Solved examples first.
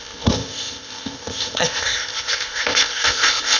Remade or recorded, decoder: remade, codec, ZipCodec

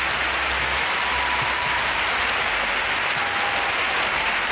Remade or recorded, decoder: recorded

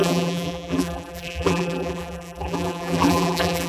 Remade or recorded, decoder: remade, vocoder, BigVGAN v2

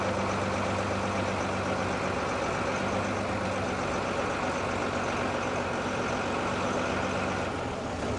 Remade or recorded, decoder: recorded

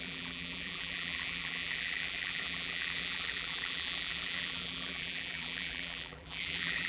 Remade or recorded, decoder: remade, vocoder, BigVGAN v2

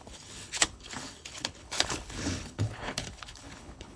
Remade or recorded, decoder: remade, codec, HILCodec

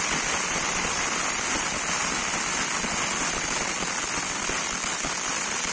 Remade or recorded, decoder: recorded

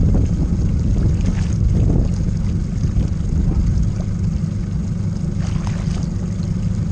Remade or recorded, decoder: recorded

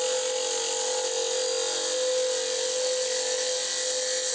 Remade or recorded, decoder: recorded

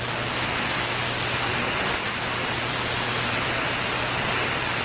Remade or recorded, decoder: recorded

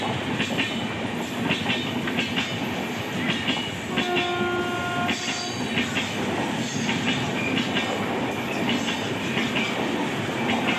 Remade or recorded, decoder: recorded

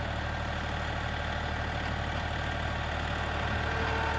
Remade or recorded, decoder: recorded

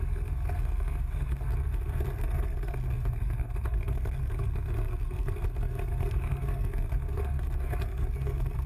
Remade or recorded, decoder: remade, codec, SNAC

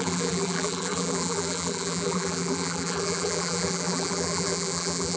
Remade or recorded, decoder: remade, vocoder, BigVGAN v2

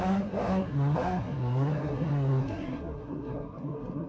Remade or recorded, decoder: remade, codec, SNAC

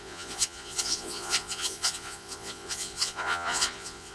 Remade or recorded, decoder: remade, vocoder, Vocos